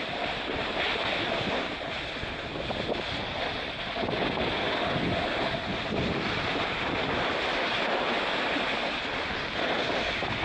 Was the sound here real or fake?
real